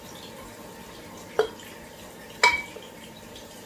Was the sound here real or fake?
real